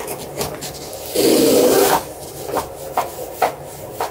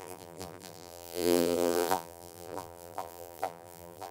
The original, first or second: first